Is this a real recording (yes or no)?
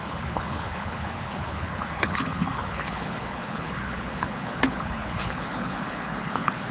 no